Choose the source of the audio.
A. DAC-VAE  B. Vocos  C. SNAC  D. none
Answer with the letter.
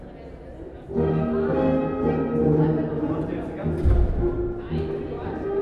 D